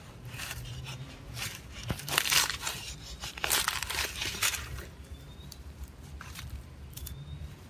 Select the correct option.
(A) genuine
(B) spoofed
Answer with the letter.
B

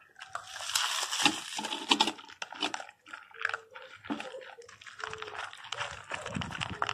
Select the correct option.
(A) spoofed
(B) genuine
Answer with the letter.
B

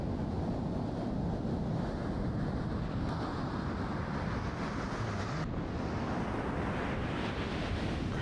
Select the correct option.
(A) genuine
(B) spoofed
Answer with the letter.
A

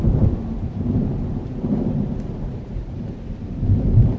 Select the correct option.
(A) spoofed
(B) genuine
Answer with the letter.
A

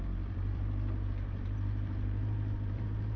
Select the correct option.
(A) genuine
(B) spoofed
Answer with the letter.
B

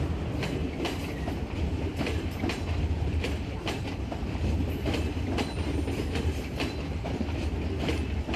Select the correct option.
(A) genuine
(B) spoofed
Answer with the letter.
B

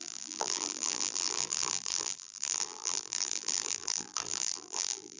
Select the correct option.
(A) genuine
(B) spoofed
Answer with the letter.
B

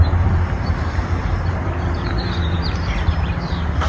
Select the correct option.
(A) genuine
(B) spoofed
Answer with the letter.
B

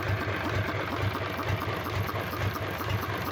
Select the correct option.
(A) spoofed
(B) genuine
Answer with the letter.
B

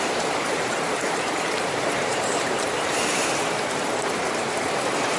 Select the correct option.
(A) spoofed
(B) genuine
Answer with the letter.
A